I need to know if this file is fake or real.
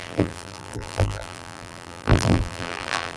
fake